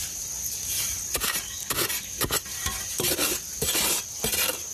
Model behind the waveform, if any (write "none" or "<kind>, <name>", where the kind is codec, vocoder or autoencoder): none